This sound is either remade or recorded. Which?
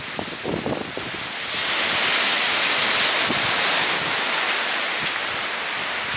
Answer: recorded